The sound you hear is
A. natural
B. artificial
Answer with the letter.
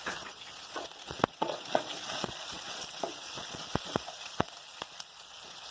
B